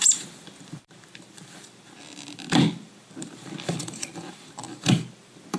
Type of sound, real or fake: fake